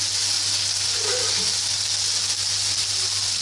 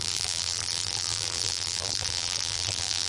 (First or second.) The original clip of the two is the first